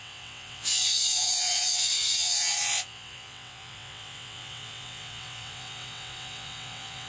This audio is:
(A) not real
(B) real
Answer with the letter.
A